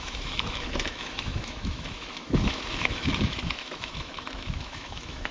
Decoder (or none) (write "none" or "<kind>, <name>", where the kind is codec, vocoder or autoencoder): autoencoder, DAC-VAE